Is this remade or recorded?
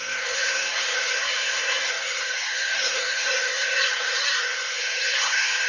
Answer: remade